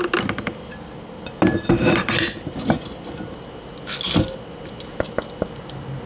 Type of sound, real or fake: real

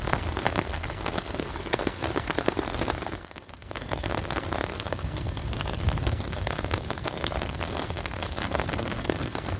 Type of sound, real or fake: fake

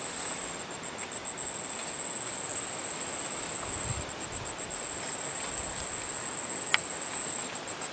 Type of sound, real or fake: real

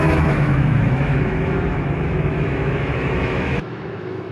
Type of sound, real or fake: fake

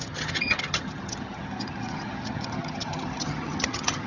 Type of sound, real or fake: fake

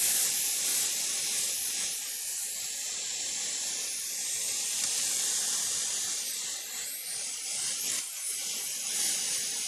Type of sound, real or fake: real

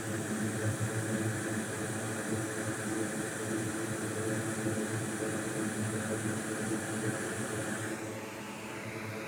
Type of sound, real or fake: real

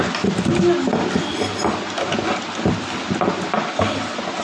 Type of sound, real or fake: real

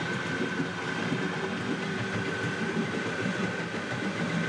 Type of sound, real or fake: real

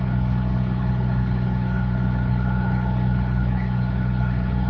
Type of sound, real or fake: fake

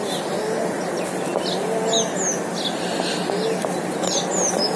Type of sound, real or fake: real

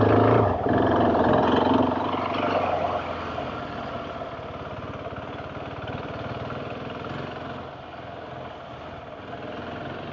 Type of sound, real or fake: real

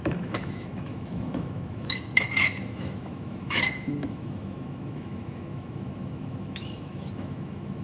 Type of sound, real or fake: fake